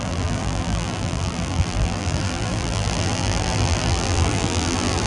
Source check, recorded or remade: remade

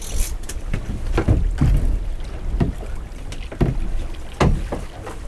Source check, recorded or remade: recorded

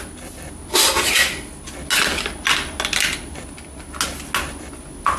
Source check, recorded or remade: recorded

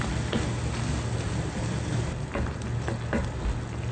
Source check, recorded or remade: recorded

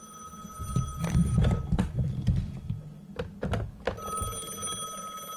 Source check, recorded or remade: recorded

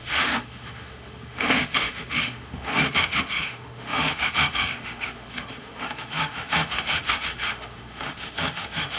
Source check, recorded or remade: remade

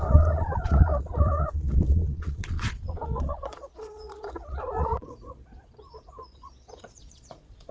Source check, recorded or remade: remade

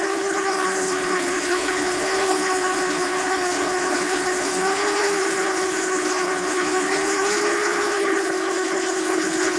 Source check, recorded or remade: remade